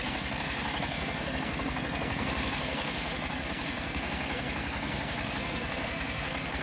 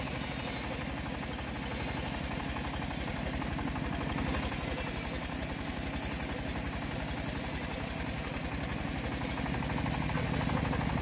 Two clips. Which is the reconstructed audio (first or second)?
first